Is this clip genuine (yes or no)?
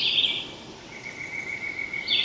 yes